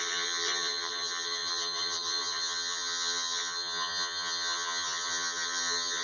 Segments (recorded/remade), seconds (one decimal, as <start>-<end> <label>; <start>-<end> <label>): 0.0-6.0 remade